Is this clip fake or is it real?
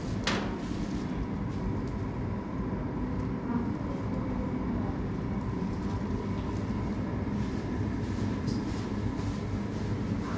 real